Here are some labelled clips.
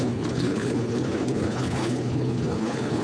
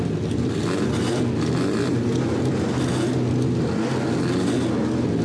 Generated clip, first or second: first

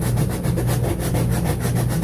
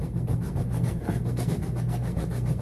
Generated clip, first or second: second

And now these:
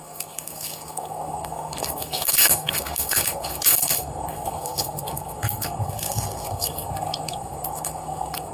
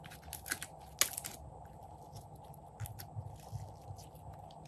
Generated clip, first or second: first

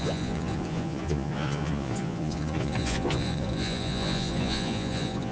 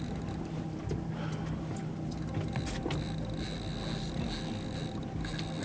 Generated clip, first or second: first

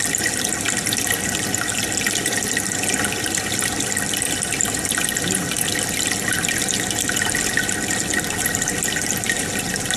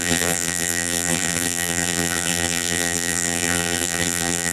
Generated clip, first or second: second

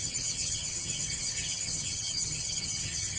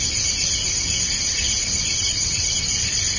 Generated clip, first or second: first